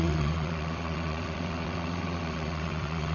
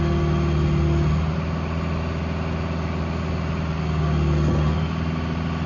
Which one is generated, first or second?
first